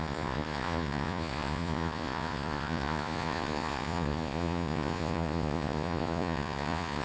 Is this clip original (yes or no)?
no